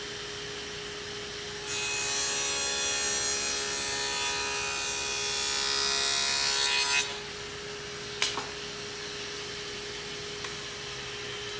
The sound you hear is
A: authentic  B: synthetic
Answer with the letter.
A